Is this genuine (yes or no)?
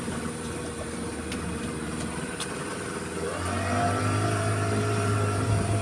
no